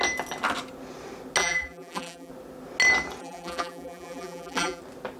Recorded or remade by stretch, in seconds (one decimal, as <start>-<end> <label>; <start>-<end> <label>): 0.0-1.4 recorded; 1.4-2.3 remade; 2.3-3.2 recorded; 3.2-4.8 remade; 4.8-5.2 recorded